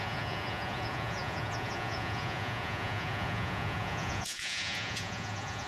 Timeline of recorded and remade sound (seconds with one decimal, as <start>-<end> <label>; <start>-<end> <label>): 0.0-5.7 remade